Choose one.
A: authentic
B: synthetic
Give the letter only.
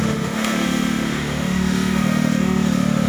B